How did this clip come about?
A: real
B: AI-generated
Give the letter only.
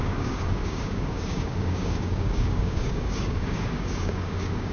B